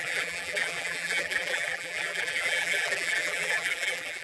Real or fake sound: fake